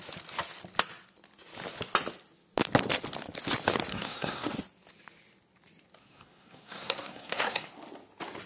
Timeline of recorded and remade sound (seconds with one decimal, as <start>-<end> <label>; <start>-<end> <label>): 0.0-3.9 recorded; 3.9-4.5 remade; 4.5-6.0 recorded; 6.0-7.7 remade; 7.7-8.5 recorded